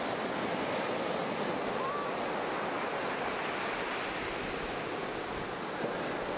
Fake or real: real